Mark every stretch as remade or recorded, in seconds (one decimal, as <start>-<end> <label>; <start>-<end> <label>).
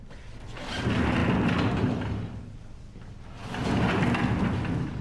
0.0-5.0 recorded